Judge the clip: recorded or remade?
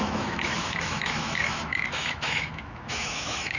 remade